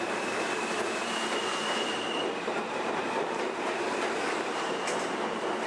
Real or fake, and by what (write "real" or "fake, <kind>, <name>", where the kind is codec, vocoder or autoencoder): fake, vocoder, BigVGAN v2